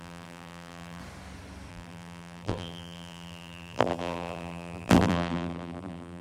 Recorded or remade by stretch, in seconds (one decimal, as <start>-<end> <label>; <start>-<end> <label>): 0.0-1.0 remade; 1.0-1.7 recorded; 1.7-6.2 remade